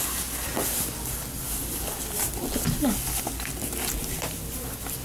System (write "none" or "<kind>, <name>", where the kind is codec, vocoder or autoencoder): none